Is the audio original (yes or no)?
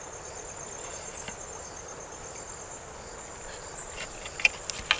yes